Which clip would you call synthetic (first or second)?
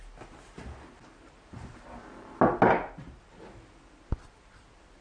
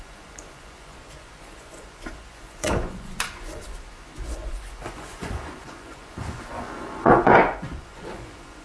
second